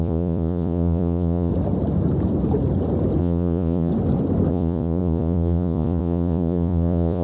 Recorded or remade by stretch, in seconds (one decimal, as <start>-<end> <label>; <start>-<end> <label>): 0.0-1.5 remade; 1.5-3.2 recorded; 3.2-3.9 remade; 3.9-4.5 recorded; 4.5-7.2 remade